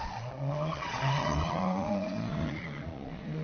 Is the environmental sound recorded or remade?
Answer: remade